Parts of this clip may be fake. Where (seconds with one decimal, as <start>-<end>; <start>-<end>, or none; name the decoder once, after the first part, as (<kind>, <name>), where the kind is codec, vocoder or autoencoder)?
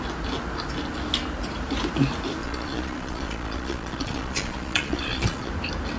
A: 2.4-5.5 (vocoder, Vocos)